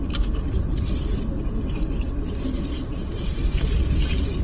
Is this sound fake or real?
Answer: real